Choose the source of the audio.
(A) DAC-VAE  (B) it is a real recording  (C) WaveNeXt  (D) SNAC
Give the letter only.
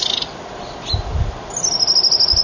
B